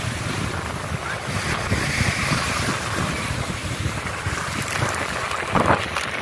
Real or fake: real